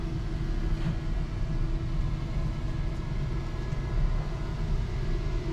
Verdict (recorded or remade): recorded